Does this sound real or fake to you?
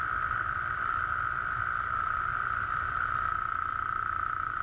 fake